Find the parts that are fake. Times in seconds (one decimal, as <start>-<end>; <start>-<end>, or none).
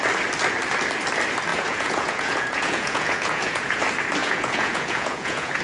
1.5-3.8; 4.2-5.6